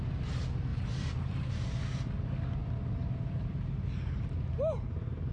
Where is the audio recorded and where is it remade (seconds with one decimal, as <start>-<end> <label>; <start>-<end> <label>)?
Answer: 0.0-0.7 recorded; 0.7-1.5 remade; 1.5-3.0 recorded; 3.0-4.2 remade; 4.2-5.3 recorded